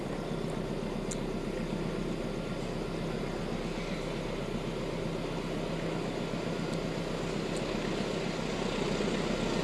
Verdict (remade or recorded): recorded